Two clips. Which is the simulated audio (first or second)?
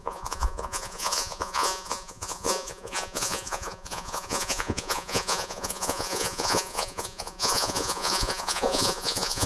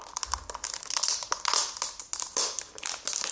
first